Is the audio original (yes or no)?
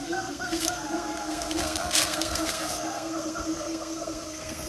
no